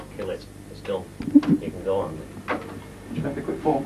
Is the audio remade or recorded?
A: recorded